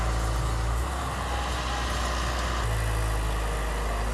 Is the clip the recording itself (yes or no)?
yes